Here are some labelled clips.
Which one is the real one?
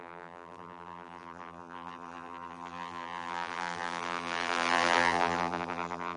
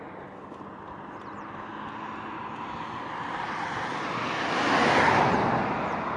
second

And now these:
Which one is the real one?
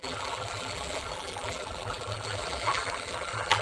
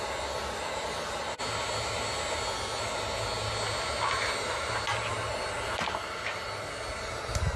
second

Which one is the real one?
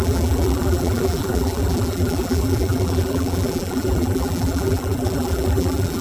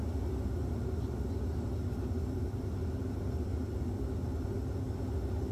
second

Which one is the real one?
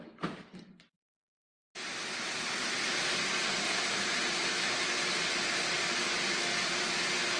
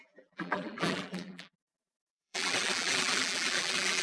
first